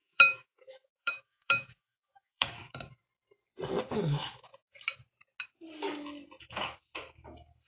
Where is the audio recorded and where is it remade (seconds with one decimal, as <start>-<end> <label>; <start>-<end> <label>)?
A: 0.0-3.0 remade; 3.0-3.9 recorded; 3.9-4.5 remade; 4.5-6.4 recorded; 6.4-7.7 remade